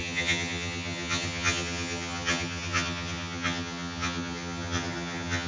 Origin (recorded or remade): remade